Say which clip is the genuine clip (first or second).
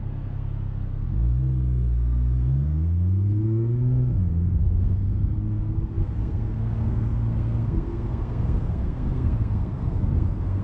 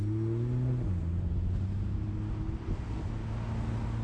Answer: second